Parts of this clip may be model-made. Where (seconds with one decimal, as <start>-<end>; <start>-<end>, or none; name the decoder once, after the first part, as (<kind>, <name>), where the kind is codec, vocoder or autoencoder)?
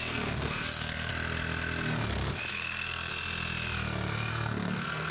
0.0-1.1 (codec, SNAC); 2.5-3.1; 4.3-5.1